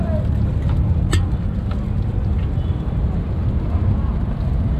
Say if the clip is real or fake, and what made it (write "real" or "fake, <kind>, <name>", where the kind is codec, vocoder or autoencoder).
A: real